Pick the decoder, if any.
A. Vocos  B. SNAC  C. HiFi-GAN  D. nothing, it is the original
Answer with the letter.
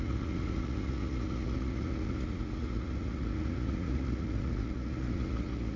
A